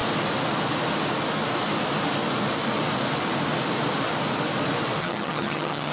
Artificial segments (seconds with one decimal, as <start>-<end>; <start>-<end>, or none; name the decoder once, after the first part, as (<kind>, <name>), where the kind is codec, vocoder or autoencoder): 5.0-5.9 (vocoder, HiFi-GAN)